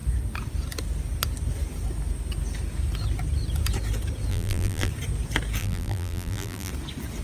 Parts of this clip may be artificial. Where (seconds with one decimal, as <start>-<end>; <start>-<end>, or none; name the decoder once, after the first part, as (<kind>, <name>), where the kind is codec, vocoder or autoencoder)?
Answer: 4.3-4.9 (vocoder, BigVGAN v2); 5.6-6.7